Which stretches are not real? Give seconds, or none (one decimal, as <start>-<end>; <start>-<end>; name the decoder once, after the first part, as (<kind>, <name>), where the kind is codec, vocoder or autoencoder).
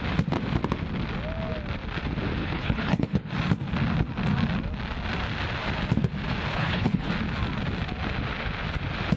2.4-3.3 (codec, HILCodec); 6.5-7.1